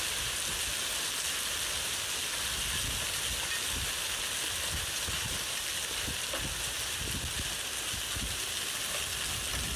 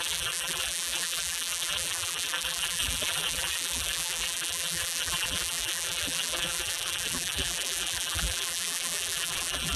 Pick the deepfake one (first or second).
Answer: second